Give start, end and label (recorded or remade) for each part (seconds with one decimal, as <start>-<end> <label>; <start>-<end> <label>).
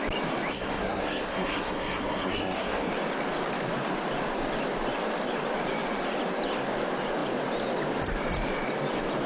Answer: 0.0-0.5 recorded; 0.5-2.9 remade; 2.9-9.3 recorded